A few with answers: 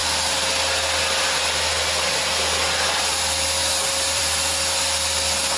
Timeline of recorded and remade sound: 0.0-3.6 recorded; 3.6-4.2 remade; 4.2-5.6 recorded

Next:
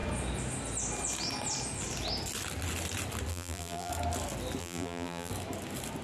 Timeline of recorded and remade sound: 0.0-3.3 recorded; 3.3-3.9 remade; 3.9-4.6 recorded; 4.6-5.3 remade; 5.3-6.0 recorded

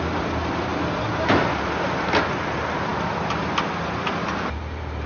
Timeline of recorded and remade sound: 0.0-5.1 recorded

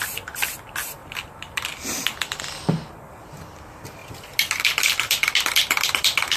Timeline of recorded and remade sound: 0.0-6.4 recorded

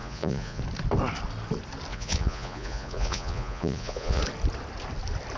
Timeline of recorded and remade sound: 0.0-0.6 remade; 0.6-1.9 recorded; 1.9-4.2 remade; 4.2-5.4 recorded